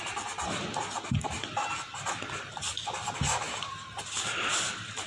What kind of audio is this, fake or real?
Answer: real